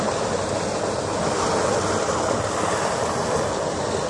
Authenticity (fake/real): real